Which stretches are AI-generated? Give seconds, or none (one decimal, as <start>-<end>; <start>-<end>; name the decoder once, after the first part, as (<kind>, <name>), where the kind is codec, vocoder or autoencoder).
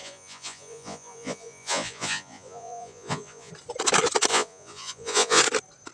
0.0-3.5 (vocoder, Vocos); 4.3-5.4